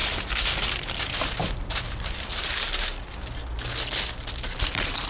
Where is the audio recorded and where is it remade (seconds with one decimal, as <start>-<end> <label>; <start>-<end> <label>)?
0.0-5.1 recorded